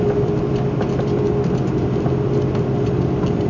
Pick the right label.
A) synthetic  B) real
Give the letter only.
B